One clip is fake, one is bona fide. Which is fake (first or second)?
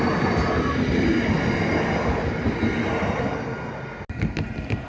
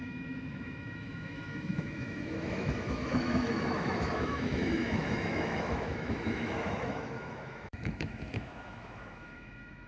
second